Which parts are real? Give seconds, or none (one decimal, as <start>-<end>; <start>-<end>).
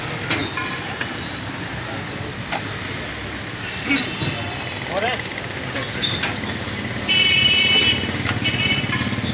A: 0.0-9.3